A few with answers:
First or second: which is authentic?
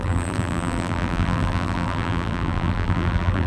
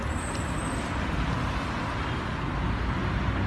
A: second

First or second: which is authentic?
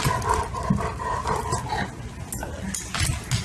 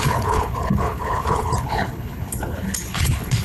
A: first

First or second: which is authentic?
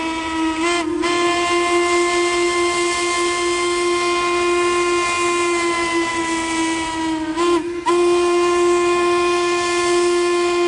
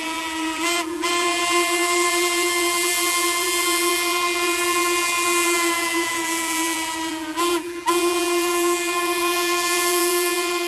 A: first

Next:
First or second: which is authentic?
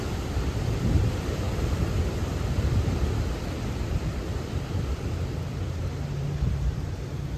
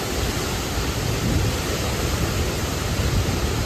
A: second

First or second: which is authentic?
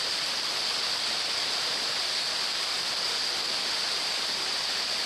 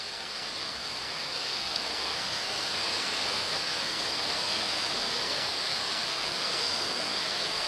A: first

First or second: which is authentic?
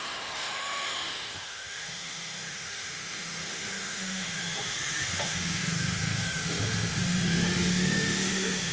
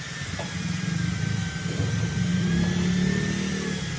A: second